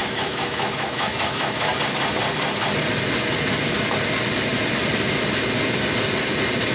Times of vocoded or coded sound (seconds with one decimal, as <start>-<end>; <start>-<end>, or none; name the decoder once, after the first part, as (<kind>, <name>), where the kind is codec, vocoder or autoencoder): 0.0-1.7 (autoencoder, DAC-VAE)